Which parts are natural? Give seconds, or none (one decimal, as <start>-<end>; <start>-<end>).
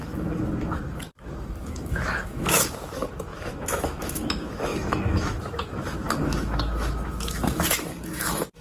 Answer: none